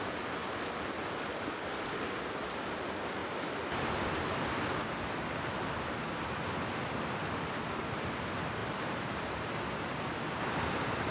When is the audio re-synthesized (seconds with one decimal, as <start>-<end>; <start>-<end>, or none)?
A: 8.6-9.5